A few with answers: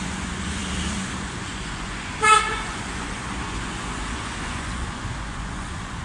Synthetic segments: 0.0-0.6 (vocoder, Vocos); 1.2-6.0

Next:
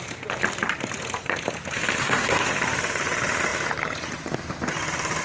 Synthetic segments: 2.0-2.5 (codec, SNAC)

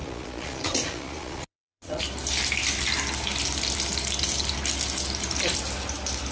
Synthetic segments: 0.0-2.0 (vocoder, Vocos)

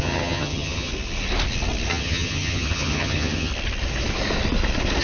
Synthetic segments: 0.0-0.9 (vocoder, HiFi-GAN); 1.9-3.5